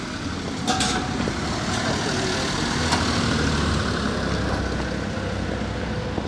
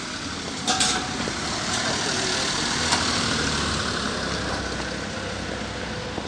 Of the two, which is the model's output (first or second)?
second